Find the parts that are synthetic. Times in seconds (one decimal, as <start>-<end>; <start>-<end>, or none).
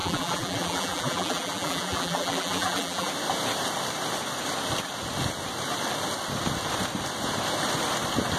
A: 0.0-3.1